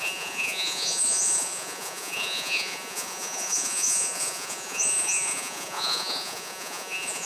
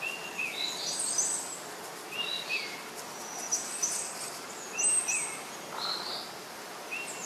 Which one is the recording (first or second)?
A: second